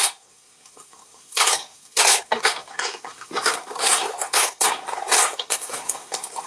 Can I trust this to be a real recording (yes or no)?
no